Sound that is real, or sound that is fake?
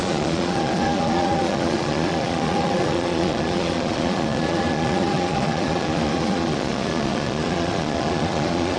fake